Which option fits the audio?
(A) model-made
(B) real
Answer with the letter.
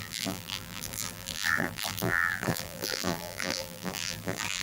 A